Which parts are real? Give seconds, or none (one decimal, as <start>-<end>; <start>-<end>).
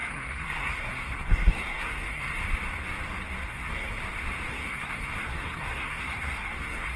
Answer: 2.4-3.5; 4.0-4.5